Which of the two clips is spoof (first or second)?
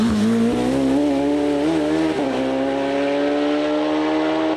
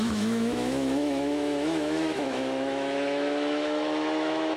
second